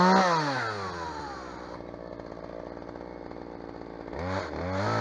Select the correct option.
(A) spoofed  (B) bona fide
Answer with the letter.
B